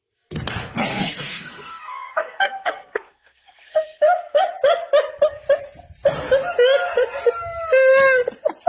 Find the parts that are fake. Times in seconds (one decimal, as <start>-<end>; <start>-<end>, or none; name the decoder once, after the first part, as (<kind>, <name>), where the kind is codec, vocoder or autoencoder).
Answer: 0.9-4.4 (codec, SNAC)